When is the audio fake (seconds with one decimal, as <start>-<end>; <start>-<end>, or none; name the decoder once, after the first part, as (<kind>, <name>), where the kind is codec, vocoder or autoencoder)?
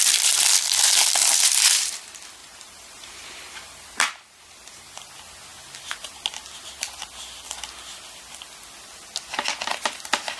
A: 1.2-2.0 (vocoder, BigVGAN v2); 2.4-5.1